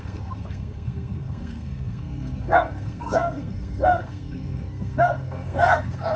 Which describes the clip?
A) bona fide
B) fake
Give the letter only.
B